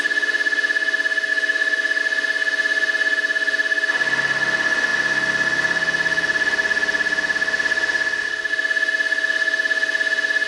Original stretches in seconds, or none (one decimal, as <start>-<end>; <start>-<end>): 0.0-1.3; 2.0-10.5